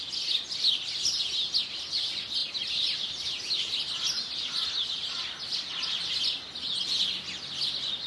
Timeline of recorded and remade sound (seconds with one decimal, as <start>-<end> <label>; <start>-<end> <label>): 0.0-8.1 recorded